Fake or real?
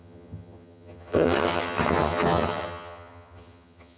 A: fake